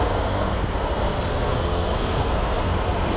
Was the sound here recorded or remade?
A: remade